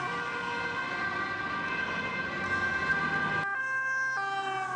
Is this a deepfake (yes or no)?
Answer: no